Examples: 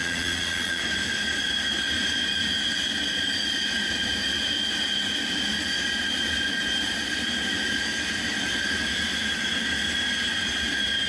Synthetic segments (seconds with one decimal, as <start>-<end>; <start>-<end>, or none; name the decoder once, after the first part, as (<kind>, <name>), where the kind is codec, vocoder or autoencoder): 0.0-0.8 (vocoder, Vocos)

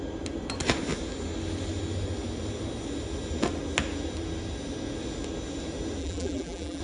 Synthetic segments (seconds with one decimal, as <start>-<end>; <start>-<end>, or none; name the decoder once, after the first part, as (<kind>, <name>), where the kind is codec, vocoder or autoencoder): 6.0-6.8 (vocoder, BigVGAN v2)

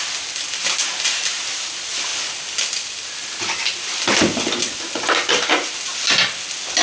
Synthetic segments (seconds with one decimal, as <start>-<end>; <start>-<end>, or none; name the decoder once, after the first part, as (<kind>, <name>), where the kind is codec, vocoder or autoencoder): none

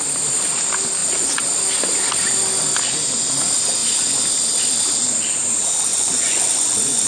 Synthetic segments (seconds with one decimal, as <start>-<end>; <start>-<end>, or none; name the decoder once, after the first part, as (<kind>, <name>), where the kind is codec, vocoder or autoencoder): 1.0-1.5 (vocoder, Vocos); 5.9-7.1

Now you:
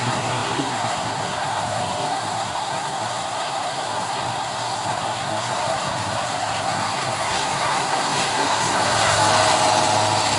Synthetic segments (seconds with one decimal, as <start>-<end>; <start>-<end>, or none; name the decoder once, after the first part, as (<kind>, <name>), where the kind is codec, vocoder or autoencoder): 0.0-9.3 (codec, SNAC)

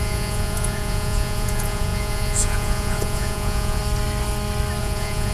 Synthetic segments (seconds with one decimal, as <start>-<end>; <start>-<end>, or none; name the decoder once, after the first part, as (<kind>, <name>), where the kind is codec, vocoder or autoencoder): 0.0-3.8 (vocoder, Vocos); 4.8-5.3